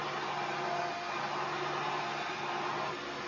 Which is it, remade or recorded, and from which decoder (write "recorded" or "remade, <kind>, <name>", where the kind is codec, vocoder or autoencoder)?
recorded